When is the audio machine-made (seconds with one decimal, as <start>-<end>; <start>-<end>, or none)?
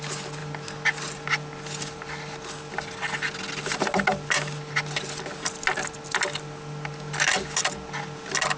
none